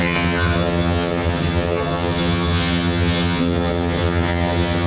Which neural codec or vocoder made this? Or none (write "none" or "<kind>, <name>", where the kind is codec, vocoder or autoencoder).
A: vocoder, HiFi-GAN